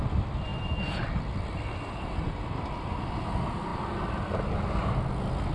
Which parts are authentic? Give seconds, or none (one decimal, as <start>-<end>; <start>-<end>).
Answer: 0.0-5.5